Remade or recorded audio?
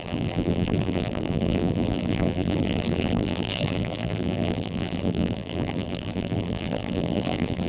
remade